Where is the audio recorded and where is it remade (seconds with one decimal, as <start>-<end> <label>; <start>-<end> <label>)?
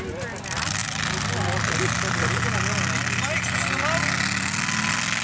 0.0-5.2 recorded